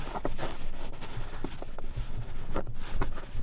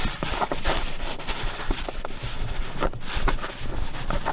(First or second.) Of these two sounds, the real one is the first